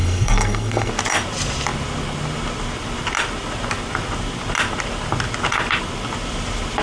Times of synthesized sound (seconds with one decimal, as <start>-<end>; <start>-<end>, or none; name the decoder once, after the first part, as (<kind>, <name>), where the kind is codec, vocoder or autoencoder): 0.0-0.9 (codec, SNAC)